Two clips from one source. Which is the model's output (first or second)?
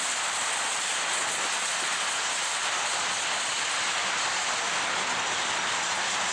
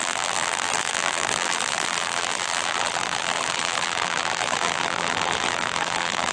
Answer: second